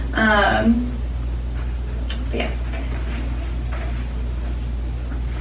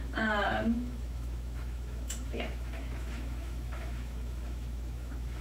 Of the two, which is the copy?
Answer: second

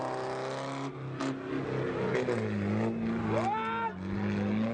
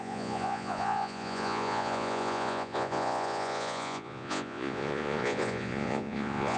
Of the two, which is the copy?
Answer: second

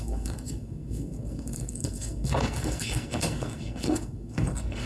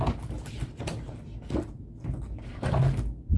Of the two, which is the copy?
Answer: first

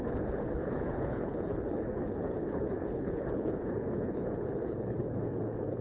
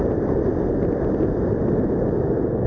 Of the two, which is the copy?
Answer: first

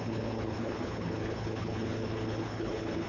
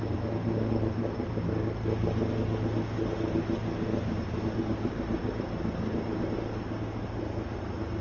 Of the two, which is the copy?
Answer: first